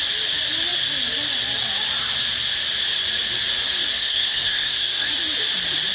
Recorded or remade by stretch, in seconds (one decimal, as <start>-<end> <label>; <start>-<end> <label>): 0.0-4.0 recorded; 4.0-5.1 remade; 5.1-5.9 recorded